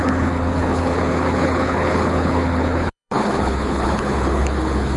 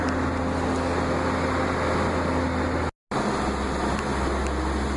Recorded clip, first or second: second